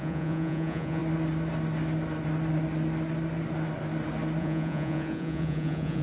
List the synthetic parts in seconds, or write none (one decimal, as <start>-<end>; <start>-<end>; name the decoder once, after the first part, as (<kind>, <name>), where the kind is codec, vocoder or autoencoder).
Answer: 0.0-1.0 (vocoder, Vocos); 4.4-6.0